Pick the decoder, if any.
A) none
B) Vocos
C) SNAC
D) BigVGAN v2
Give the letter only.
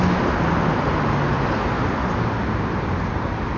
A